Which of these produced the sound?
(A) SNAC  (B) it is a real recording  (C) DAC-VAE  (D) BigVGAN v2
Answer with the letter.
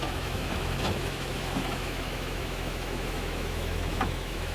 C